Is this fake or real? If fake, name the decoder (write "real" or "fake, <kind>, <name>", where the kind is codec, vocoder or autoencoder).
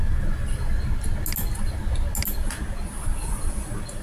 real